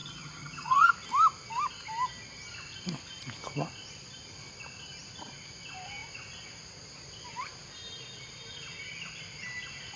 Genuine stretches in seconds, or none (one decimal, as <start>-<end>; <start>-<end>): 0.9-10.0